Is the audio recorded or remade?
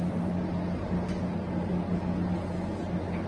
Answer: recorded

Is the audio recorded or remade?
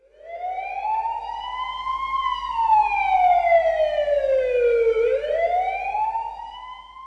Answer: recorded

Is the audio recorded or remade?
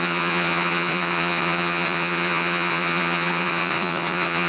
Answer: remade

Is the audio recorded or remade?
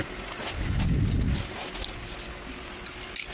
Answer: recorded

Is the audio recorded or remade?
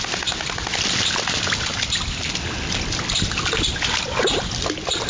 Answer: recorded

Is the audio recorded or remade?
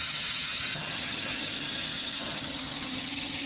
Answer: remade